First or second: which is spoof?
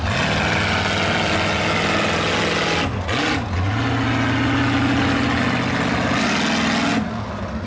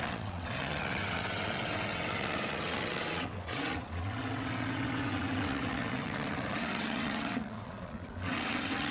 second